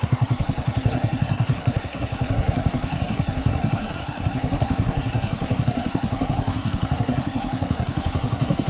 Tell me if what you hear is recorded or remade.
remade